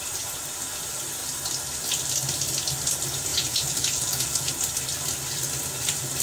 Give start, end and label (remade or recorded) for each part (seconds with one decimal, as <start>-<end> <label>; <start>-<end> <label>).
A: 0.0-3.3 recorded; 3.3-4.5 remade; 4.5-6.2 recorded